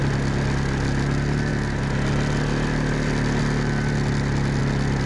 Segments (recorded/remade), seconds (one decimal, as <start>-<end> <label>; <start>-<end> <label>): 0.0-5.1 recorded